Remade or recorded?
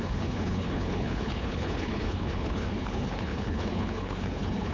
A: remade